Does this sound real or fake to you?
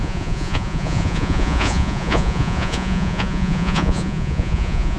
fake